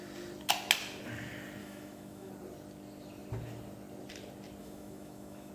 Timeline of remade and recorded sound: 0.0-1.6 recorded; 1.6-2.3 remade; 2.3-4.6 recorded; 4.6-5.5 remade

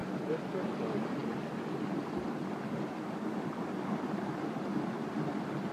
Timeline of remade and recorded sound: 0.0-5.7 recorded

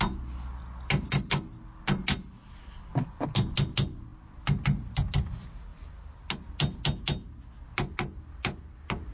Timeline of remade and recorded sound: 0.0-9.1 recorded

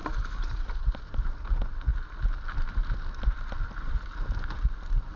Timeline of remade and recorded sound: 0.0-5.2 recorded

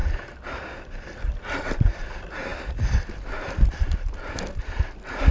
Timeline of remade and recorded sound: 0.0-5.3 recorded